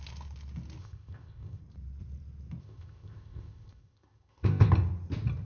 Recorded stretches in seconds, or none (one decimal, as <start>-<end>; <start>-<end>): 0.0-0.8; 1.6-2.6; 4.7-5.4